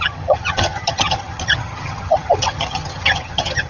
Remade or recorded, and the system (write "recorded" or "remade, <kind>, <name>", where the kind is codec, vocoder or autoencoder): remade, vocoder, HiFi-GAN